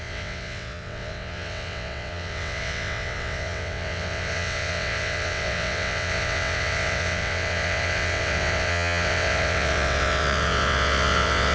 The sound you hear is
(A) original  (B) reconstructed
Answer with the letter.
B